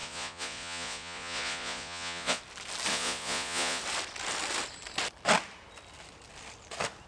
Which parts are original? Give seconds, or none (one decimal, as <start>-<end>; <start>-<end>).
2.4-2.9; 3.8-7.1